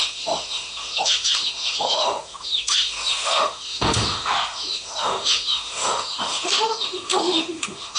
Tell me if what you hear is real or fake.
fake